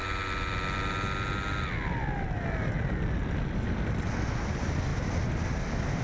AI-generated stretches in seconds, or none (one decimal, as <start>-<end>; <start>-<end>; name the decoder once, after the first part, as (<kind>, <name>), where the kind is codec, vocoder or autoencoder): none

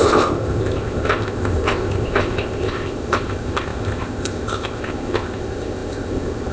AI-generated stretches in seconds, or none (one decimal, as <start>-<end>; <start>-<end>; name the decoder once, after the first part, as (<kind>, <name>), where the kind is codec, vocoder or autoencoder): 0.0-6.5 (codec, ZipCodec)

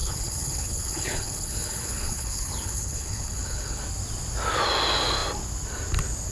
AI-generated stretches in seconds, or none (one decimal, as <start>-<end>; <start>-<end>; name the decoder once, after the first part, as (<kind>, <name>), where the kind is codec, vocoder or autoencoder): 0.0-3.8 (codec, HILCodec)

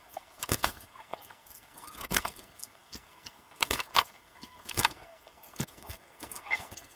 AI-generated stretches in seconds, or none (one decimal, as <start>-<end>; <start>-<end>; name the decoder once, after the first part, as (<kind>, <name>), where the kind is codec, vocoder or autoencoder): 0.0-7.0 (codec, SNAC)